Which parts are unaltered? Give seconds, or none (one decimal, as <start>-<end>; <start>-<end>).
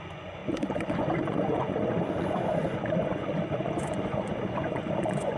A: none